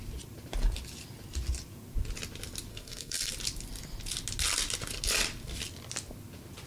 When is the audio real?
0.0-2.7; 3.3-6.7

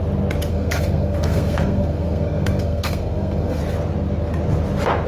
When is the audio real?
0.0-0.5; 3.6-5.1

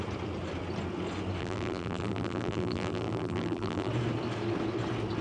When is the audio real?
0.0-1.4; 3.9-5.2

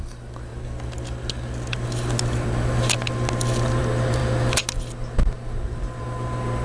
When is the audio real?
0.0-6.6